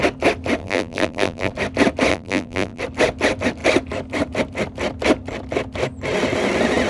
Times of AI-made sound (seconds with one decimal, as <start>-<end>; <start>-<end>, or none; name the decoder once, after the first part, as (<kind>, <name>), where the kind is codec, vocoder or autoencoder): 0.6-1.5 (vocoder, BigVGAN v2); 2.1-2.8